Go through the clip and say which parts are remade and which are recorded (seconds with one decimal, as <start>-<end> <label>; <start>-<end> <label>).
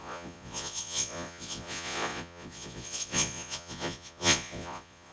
0.0-5.1 remade